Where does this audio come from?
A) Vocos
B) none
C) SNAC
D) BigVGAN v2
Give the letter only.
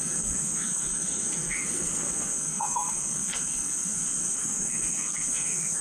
C